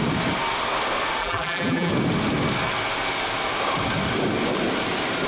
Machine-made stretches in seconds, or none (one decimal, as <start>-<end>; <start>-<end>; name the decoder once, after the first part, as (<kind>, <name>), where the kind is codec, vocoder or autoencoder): 1.2-1.9 (vocoder, BigVGAN v2)

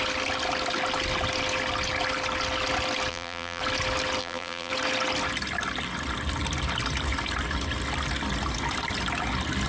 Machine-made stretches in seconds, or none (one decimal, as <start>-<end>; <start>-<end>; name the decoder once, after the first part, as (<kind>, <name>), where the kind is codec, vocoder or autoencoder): 3.1-3.6 (vocoder, BigVGAN v2); 4.2-4.7

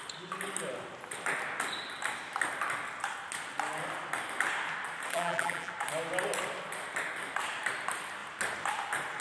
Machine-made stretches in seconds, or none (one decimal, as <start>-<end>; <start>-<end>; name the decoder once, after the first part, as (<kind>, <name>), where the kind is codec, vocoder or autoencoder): 5.1-5.7 (vocoder, BigVGAN v2)

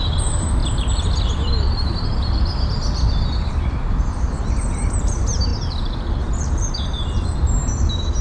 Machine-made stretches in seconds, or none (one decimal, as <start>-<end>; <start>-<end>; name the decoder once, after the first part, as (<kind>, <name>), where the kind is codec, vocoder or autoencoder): 0.0-0.6 (vocoder, BigVGAN v2); 3.5-5.5; 6.2-8.2

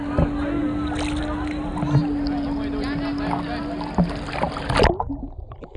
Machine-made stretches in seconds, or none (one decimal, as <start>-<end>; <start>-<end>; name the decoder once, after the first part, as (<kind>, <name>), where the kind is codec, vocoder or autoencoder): none

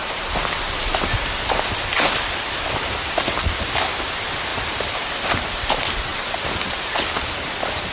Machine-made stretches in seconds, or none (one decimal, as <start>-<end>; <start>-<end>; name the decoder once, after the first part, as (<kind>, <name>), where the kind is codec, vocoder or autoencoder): 0.0-0.6 (vocoder, BigVGAN v2); 4.5-5.6